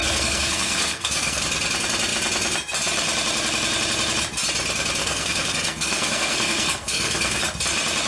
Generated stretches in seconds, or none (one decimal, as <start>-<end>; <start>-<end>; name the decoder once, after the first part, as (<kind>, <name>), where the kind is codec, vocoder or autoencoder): 0.0-1.4 (codec, SNAC); 5.0-7.4